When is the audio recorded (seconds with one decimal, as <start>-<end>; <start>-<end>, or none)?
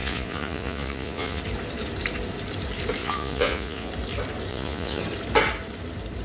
1.4-3.0; 3.9-4.5; 5.0-6.2